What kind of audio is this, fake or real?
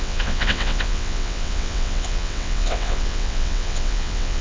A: fake